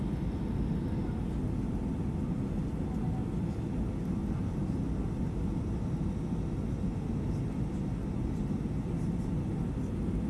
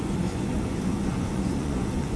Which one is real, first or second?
first